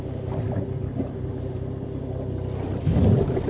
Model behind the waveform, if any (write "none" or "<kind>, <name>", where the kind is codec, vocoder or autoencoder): none